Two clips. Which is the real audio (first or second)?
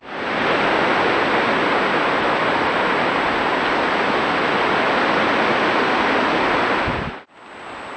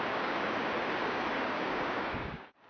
first